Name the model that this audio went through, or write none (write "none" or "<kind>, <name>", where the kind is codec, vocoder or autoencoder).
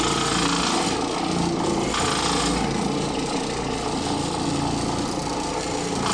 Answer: none